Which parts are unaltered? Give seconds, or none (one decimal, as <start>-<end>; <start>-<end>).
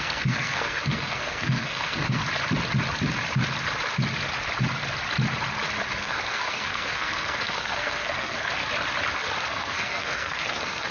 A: 2.2-6.0; 8.6-9.4